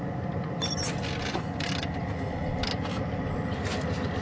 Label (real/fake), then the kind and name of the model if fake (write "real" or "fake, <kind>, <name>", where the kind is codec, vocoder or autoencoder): real